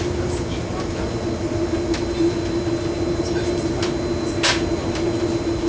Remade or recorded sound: recorded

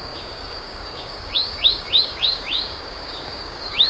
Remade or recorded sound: remade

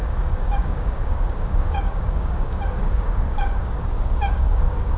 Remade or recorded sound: remade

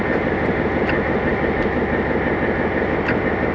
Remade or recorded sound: recorded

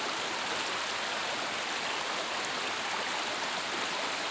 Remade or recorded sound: recorded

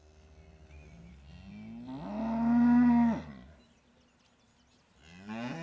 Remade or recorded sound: recorded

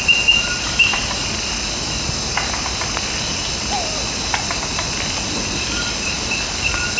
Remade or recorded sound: recorded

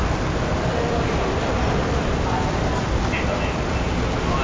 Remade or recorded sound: recorded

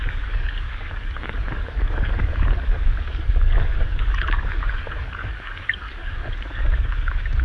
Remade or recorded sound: remade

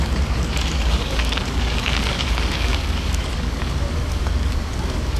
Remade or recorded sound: remade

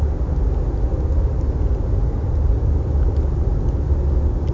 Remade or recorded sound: recorded